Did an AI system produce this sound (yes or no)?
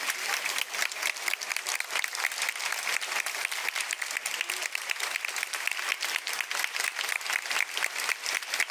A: no